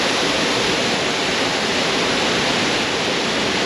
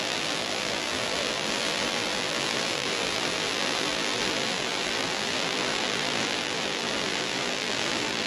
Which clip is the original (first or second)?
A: first